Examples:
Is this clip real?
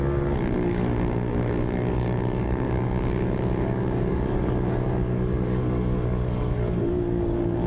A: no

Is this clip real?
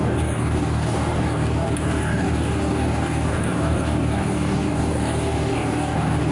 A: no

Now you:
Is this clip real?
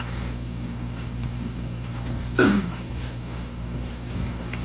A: no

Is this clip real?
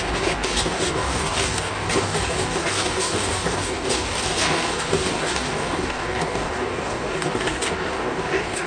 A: no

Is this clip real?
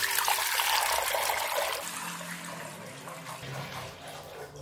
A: yes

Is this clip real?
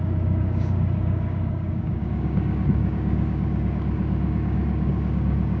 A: no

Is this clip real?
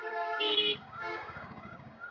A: no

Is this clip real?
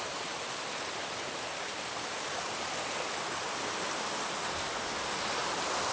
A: yes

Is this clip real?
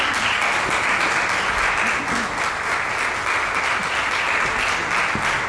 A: yes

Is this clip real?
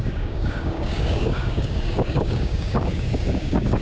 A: no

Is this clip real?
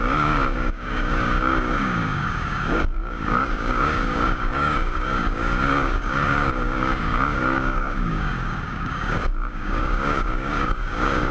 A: no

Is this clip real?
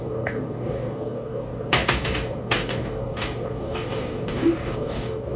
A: no